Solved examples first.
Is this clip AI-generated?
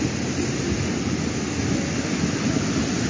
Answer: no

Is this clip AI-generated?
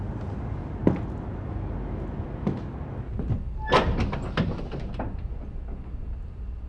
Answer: no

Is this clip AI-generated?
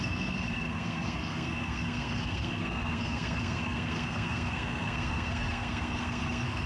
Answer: yes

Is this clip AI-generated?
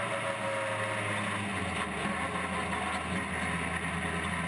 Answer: no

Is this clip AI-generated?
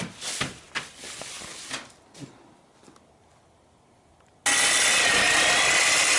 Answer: no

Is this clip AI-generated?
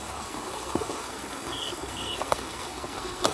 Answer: yes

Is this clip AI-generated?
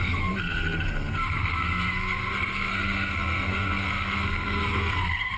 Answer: yes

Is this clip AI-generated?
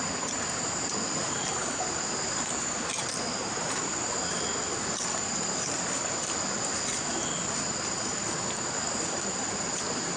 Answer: no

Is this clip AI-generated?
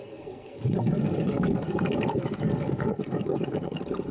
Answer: yes